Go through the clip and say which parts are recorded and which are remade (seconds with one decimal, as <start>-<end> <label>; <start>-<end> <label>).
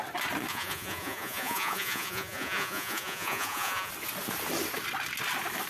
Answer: 0.0-0.5 recorded; 0.5-3.9 remade; 3.9-5.7 recorded